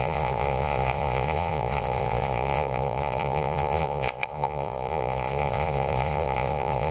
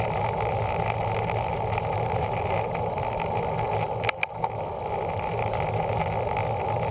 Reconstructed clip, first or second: first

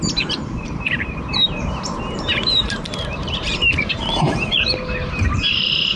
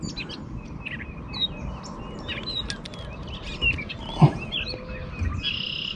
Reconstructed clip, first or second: first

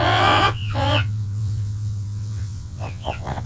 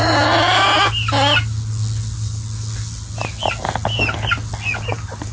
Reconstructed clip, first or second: first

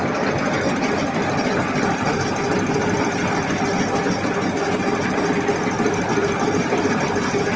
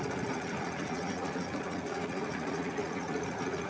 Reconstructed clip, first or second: second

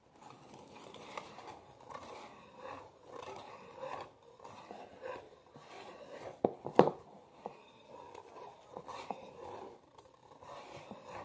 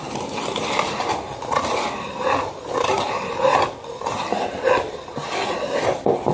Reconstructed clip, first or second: first